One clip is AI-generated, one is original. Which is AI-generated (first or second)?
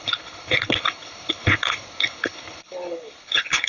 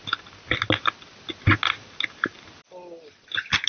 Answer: first